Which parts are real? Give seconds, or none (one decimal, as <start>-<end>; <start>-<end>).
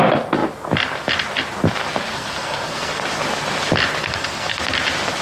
0.0-2.1; 3.0-4.0; 4.6-5.2